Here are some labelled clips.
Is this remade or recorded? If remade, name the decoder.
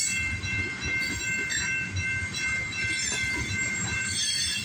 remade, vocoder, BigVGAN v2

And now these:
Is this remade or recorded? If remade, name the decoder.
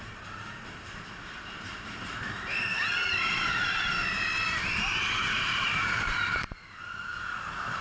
remade, vocoder, BigVGAN v2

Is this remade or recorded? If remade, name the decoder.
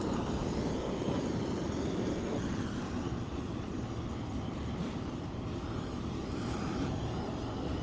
remade, vocoder, BigVGAN v2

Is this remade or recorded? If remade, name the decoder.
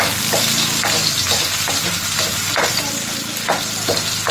recorded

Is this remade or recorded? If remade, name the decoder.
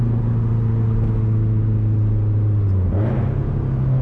recorded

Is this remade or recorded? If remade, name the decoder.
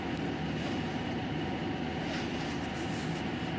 recorded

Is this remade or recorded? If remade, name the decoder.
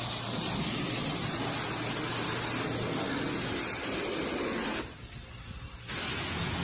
recorded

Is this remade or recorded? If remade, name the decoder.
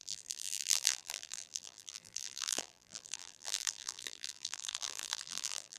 remade, vocoder, BigVGAN v2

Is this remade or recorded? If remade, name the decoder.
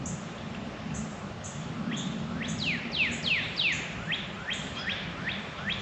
recorded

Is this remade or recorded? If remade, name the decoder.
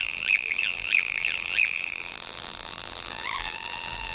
remade, vocoder, BigVGAN v2